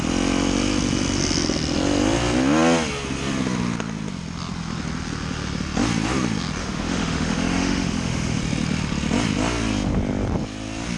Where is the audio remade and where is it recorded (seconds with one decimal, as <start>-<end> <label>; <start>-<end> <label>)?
0.0-6.6 recorded; 6.6-8.4 remade; 8.4-11.0 recorded